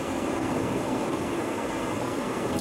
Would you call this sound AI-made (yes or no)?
yes